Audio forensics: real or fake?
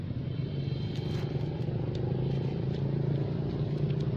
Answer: real